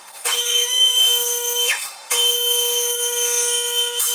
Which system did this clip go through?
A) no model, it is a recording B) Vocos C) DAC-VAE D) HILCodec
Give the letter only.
C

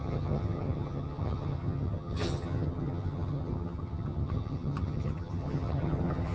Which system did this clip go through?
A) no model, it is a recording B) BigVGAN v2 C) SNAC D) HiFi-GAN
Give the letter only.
D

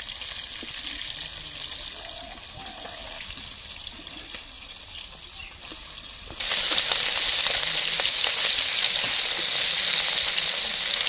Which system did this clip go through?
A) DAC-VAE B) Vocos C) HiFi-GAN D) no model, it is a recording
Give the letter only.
D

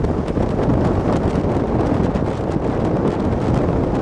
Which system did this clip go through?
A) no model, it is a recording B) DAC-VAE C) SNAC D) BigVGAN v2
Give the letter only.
A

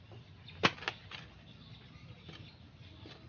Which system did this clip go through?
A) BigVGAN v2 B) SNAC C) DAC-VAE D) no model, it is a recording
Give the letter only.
D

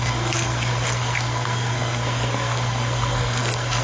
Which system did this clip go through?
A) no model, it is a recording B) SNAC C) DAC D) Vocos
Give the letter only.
B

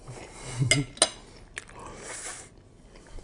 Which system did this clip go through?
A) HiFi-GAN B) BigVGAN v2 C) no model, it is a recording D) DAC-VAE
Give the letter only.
C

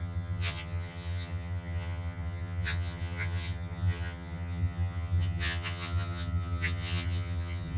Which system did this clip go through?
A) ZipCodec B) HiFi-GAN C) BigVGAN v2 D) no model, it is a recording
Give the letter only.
B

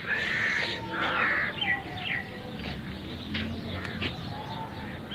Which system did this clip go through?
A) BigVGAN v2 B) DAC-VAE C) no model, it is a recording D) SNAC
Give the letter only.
C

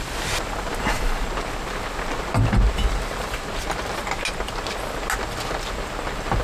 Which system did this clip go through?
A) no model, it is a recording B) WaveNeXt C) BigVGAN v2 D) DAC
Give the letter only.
A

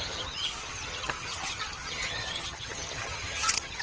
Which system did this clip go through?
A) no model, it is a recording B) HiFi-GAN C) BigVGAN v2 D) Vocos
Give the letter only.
B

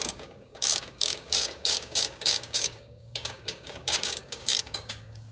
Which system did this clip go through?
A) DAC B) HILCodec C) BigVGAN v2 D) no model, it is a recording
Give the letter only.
A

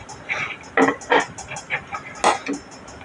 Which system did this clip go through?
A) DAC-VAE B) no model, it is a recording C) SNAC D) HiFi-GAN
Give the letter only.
B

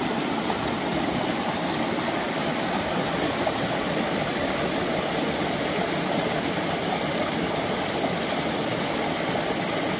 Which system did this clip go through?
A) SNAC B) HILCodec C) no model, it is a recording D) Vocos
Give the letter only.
C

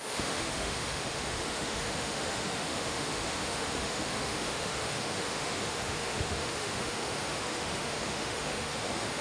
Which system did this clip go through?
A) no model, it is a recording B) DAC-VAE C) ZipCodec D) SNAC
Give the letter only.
B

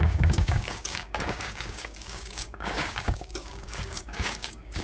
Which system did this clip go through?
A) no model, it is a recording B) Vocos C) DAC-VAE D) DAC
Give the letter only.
D